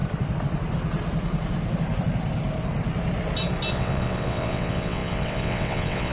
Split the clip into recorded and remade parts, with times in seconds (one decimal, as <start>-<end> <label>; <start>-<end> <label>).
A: 0.0-3.7 recorded; 3.7-6.1 remade